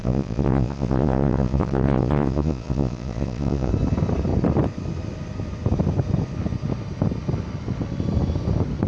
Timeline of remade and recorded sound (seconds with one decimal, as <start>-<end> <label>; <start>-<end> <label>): 0.0-3.7 remade; 3.7-8.9 recorded